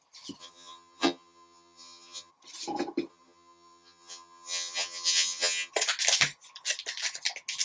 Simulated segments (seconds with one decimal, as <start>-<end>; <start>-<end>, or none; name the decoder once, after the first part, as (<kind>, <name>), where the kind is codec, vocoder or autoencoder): 0.4-2.3 (vocoder, HiFi-GAN); 3.1-5.7